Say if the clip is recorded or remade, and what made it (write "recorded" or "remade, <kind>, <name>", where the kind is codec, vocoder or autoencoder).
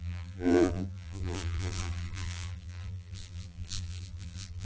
remade, vocoder, BigVGAN v2